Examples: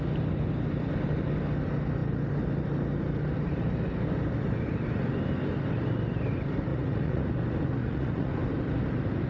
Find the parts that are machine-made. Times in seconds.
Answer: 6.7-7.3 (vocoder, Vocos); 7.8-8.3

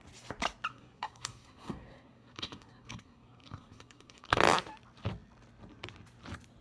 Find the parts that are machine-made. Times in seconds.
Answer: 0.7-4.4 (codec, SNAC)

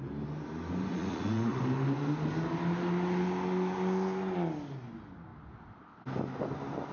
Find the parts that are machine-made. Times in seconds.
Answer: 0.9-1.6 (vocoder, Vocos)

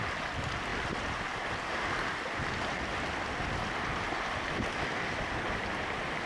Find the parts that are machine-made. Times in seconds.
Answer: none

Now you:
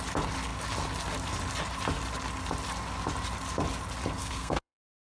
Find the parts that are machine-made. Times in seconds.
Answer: 4.2-5.0 (codec, SNAC)

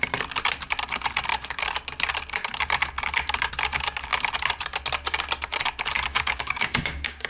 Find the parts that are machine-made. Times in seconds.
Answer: 6.1-7.3 (codec, DAC)